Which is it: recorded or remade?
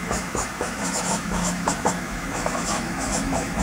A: remade